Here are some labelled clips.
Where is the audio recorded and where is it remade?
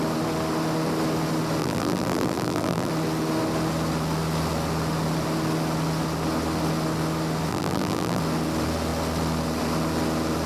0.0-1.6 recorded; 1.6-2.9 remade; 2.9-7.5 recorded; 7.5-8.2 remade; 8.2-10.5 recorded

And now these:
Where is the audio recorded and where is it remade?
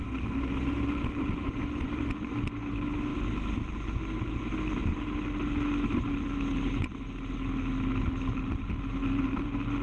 0.0-9.8 recorded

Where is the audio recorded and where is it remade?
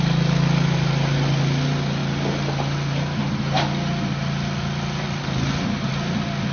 0.0-6.5 recorded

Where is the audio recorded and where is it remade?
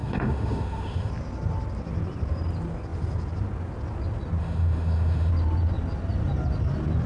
0.0-1.1 remade; 1.1-4.4 recorded; 4.4-5.3 remade; 5.3-7.1 recorded